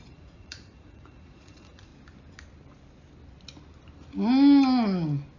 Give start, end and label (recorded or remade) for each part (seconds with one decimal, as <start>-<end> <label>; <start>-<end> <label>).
0.0-1.9 remade; 1.9-5.4 recorded